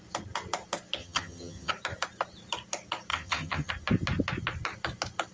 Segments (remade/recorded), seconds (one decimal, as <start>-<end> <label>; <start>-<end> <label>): 0.0-1.0 recorded; 1.0-1.7 remade; 1.7-3.1 recorded; 3.1-3.7 remade; 3.7-5.3 recorded